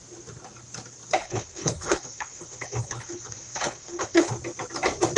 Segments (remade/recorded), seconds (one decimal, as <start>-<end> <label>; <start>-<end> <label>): 0.0-1.2 recorded; 1.2-4.3 remade; 4.3-5.2 recorded